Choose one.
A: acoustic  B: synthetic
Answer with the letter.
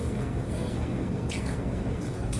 B